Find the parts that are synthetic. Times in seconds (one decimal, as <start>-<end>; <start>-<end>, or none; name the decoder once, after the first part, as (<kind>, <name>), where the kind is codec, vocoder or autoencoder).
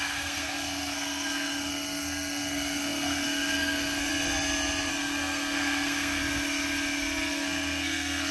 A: 0.0-4.1 (codec, SNAC); 4.9-6.2; 7.3-8.3